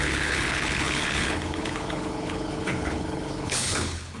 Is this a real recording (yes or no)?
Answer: no